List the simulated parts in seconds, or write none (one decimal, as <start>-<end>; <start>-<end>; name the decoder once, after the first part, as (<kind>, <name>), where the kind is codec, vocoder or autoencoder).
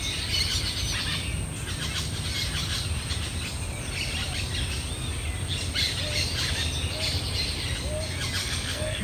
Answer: 8.4-9.0 (codec, SNAC)